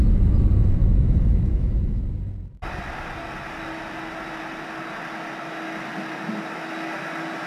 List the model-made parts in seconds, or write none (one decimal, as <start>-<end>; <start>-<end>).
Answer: 0.8-2.0